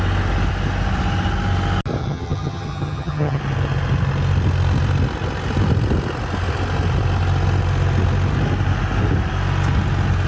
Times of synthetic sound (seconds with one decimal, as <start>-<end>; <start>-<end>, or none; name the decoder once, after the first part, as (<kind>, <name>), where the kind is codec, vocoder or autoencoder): 2.0-3.4 (vocoder, HiFi-GAN)